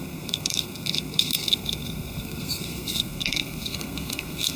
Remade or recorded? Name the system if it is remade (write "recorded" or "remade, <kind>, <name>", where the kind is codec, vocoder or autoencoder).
remade, codec, SNAC